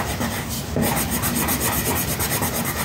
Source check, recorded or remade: recorded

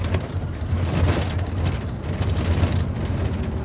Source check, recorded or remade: recorded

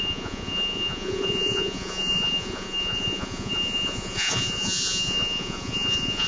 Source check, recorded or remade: remade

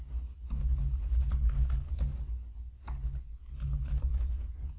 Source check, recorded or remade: recorded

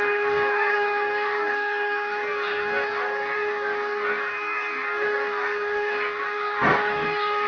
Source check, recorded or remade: remade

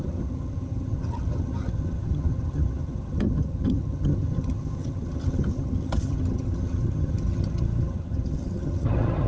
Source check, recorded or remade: remade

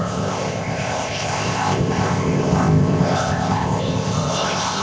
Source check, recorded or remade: remade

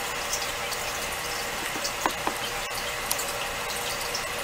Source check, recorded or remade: recorded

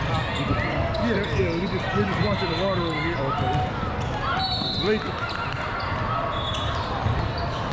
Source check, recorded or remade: recorded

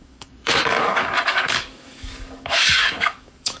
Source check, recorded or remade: remade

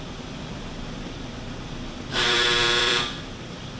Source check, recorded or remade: remade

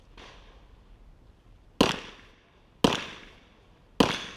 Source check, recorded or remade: recorded